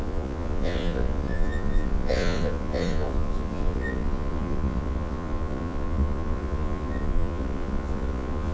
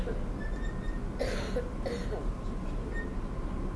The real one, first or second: second